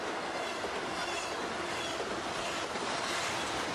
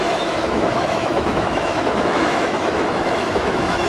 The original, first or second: first